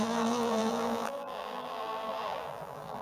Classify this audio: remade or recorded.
remade